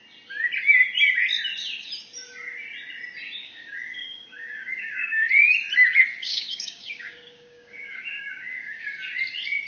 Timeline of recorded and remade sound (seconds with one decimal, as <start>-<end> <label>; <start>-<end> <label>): 0.0-3.4 recorded; 3.4-5.3 remade; 5.3-6.2 recorded; 6.2-8.8 remade; 8.8-9.7 recorded